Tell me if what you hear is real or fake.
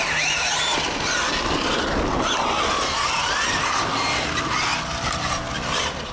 real